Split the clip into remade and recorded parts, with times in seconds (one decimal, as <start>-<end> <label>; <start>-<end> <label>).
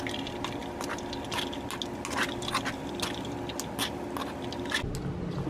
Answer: 0.0-5.5 recorded